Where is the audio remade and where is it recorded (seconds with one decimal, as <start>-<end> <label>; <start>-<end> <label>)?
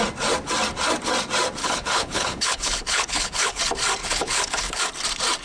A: 0.0-1.6 recorded; 1.6-3.6 remade; 3.6-4.0 recorded; 4.0-4.8 remade; 4.8-5.4 recorded